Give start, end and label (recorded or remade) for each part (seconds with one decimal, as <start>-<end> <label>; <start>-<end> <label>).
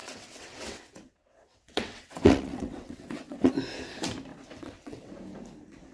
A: 0.0-3.5 remade; 3.5-4.3 recorded; 4.3-5.1 remade; 5.1-5.9 recorded